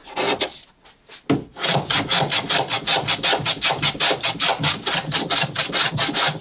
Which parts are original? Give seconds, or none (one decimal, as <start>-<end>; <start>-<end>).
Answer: 0.0-6.4